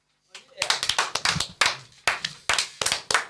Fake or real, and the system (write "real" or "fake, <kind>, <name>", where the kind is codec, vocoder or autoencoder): real